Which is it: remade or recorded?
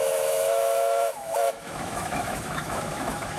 remade